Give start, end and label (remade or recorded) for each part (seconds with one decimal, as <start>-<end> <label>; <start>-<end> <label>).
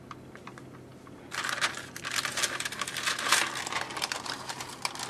0.0-5.1 recorded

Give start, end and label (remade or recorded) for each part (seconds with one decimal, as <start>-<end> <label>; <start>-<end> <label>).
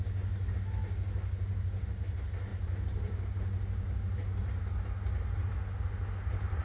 0.0-6.6 recorded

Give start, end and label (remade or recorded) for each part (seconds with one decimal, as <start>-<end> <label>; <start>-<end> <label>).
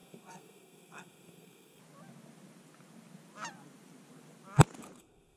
0.0-1.8 remade; 1.8-5.0 recorded; 5.0-5.4 remade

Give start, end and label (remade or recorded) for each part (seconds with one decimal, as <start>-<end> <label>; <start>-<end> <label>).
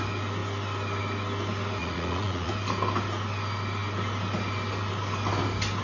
0.0-1.8 recorded; 1.8-2.5 remade; 2.5-5.8 recorded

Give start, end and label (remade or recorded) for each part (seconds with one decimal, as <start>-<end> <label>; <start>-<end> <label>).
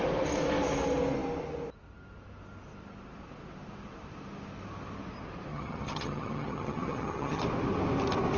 0.0-5.5 recorded; 5.5-7.4 remade; 7.4-8.4 recorded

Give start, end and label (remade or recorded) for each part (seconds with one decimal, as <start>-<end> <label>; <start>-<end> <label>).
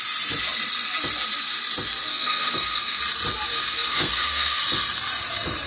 0.0-2.1 recorded; 2.1-3.0 remade; 3.0-3.5 recorded; 3.5-4.6 remade; 4.6-5.7 recorded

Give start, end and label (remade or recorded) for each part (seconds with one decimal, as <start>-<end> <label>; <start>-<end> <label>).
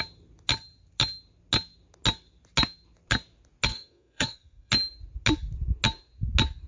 0.0-3.7 recorded; 3.7-4.7 remade; 4.7-6.7 recorded